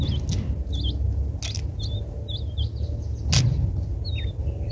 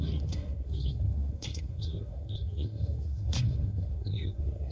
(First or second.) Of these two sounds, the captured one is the first